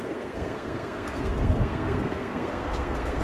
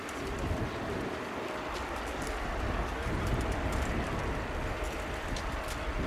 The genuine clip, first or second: second